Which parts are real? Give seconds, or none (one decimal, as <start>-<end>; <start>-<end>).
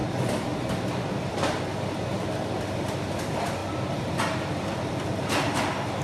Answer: 0.0-2.8; 3.6-5.3